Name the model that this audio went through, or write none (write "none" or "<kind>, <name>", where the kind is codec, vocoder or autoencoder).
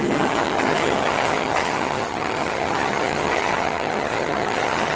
vocoder, HiFi-GAN